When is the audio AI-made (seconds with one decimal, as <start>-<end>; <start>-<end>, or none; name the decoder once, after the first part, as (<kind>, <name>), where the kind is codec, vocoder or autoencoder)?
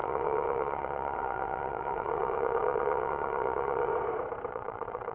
0.0-3.9 (vocoder, WaveNeXt); 4.5-5.1